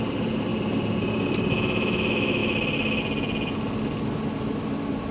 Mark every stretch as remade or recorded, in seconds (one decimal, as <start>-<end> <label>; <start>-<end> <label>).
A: 0.0-5.1 recorded